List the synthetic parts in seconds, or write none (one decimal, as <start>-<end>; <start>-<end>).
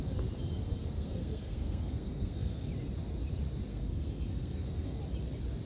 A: 0.8-2.7; 3.7-5.0